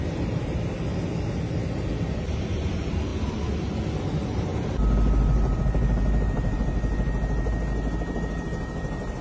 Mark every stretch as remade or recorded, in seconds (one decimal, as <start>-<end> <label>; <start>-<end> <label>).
0.0-9.2 recorded